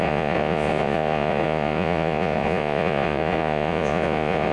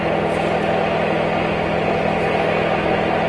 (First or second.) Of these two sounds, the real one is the second